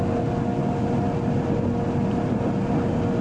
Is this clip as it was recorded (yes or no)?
yes